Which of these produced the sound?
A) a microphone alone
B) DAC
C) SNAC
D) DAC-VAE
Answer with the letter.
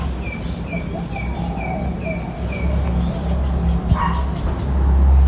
A